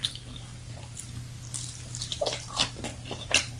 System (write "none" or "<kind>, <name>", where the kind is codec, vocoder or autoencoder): none